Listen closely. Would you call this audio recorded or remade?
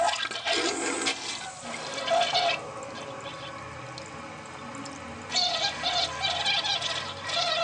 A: recorded